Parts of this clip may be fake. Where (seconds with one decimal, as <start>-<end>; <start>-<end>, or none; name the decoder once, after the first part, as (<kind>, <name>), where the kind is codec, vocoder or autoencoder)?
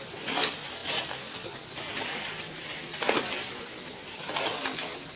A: none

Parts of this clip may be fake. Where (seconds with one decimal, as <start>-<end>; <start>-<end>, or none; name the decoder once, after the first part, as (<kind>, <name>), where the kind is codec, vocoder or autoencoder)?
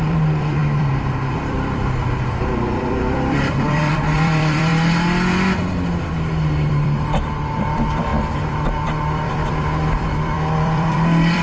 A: 0.0-4.7 (vocoder, BigVGAN v2); 6.7-8.1; 8.7-11.4